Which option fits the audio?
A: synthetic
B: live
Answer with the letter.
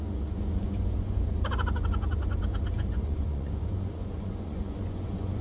A